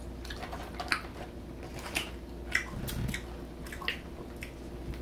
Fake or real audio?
real